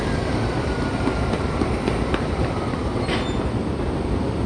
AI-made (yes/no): no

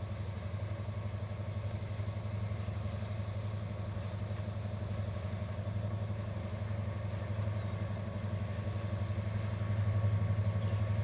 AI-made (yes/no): no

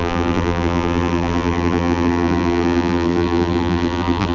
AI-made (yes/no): yes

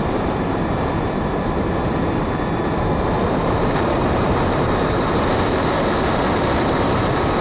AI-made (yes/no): yes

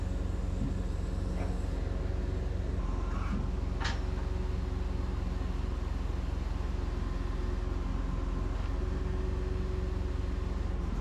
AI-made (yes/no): no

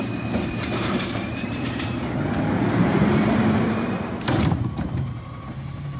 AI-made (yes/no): yes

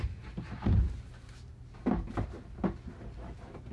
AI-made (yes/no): no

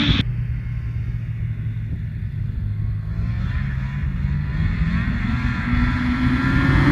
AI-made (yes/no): no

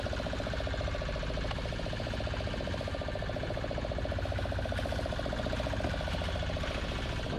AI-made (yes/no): no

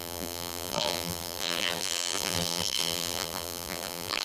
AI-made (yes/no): yes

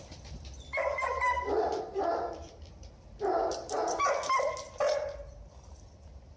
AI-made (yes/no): yes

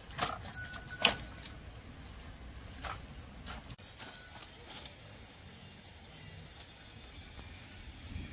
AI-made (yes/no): no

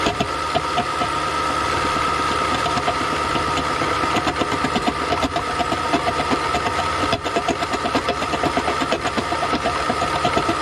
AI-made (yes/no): no